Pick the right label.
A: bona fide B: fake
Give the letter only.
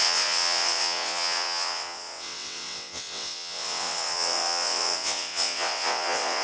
B